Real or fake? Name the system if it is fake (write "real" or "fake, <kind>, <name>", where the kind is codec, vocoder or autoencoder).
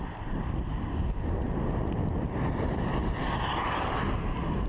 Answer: real